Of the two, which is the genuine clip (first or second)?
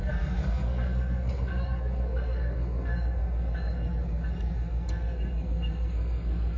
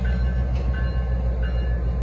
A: second